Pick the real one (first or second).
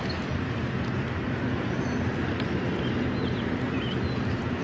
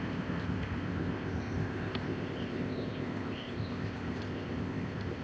first